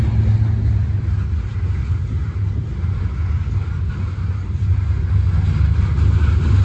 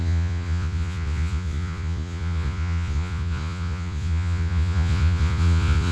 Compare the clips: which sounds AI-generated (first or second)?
second